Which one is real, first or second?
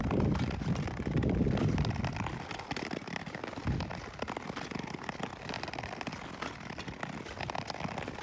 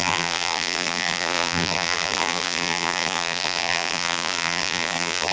first